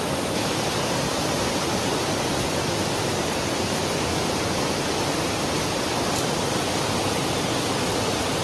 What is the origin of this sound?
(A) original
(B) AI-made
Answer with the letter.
A